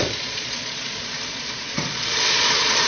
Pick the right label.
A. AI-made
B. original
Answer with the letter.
A